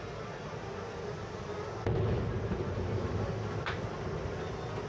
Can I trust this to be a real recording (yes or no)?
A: yes